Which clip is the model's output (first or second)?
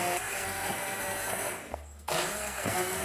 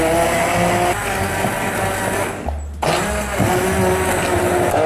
first